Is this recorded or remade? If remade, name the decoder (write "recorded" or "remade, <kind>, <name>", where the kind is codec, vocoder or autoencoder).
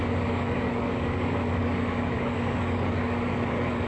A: remade, codec, DAC